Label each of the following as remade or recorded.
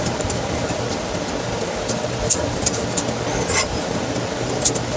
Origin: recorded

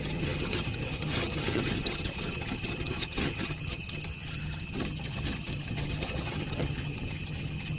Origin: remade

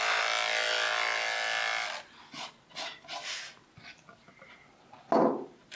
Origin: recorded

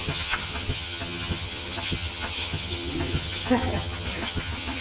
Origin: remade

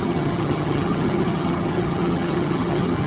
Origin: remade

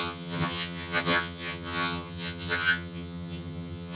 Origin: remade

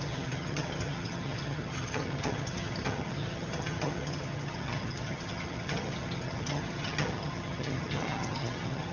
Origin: remade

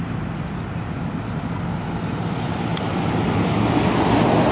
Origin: recorded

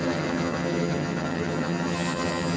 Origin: remade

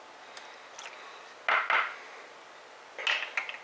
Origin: recorded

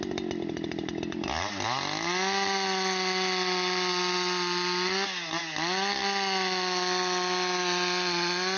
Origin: recorded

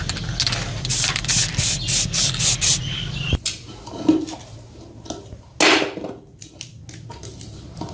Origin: recorded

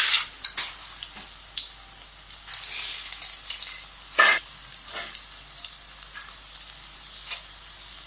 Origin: recorded